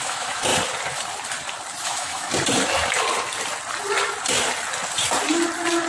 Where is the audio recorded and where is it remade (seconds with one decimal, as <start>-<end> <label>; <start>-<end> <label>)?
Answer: 0.0-0.5 remade; 0.5-1.8 recorded; 1.8-2.3 remade; 2.3-5.9 recorded